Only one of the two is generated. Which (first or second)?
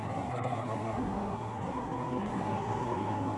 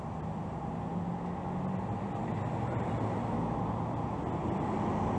first